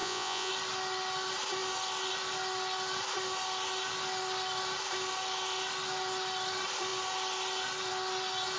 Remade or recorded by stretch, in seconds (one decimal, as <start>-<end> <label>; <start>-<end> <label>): 0.0-0.5 remade; 0.5-8.6 recorded